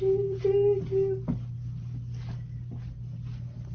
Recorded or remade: recorded